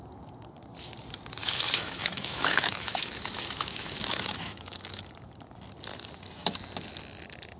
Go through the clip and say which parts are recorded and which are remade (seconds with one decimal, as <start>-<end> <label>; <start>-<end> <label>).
0.0-1.4 recorded; 1.4-5.0 remade; 5.0-7.6 recorded